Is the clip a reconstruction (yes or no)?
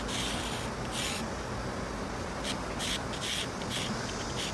no